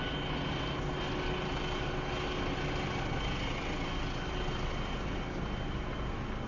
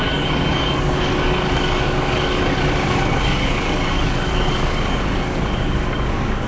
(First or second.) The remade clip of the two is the second